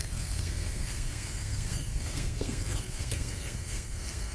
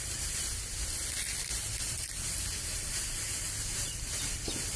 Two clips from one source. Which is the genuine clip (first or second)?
second